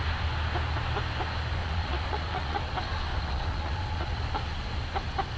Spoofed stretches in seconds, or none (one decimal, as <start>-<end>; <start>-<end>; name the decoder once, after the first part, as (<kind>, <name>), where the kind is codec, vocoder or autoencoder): 1.6-2.6 (vocoder, Vocos); 3.1-4.2